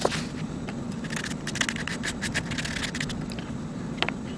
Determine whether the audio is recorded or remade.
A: recorded